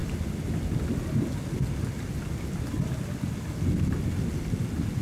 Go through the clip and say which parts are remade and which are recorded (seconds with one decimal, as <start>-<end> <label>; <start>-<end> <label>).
0.0-5.0 recorded